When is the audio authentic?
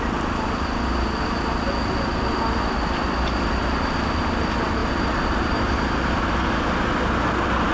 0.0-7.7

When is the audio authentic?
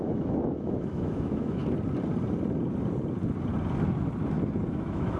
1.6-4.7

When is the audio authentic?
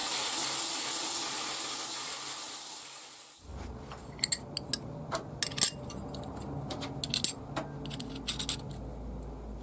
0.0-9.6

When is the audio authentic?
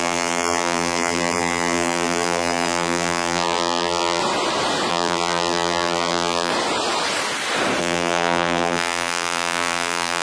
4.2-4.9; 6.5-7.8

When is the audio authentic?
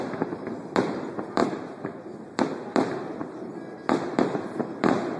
0.0-5.2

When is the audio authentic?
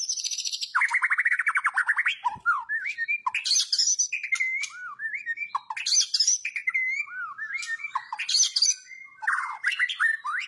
0.0-10.5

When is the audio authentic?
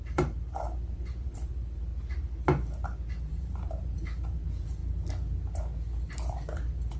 1.9-3.2; 4.8-7.0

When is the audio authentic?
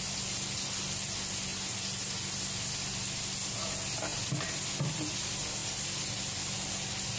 0.0-7.2